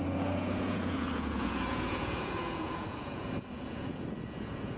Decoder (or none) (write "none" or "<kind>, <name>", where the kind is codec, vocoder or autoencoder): vocoder, Vocos